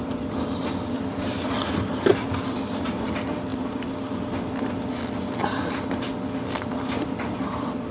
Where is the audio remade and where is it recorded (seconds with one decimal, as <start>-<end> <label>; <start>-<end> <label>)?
0.0-7.9 recorded